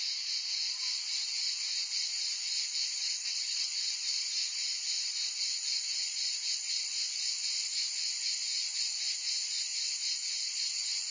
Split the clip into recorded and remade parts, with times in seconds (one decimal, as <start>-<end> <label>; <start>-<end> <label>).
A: 0.0-3.0 recorded; 3.0-3.7 remade; 3.7-11.1 recorded